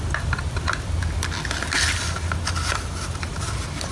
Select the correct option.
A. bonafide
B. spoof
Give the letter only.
A